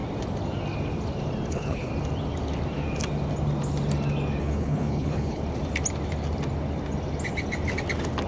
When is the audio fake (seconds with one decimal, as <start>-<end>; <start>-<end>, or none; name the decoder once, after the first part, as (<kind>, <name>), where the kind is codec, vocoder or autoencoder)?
1.5-1.9 (codec, HILCodec); 4.4-5.4